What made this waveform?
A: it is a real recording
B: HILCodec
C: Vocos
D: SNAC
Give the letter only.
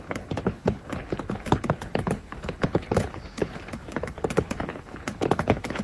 B